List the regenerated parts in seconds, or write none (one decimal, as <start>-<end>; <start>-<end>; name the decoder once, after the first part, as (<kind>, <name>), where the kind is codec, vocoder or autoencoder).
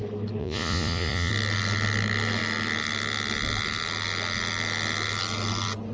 0.4-1.3 (vocoder, Vocos)